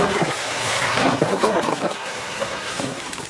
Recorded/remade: remade